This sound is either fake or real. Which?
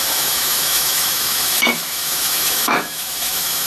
fake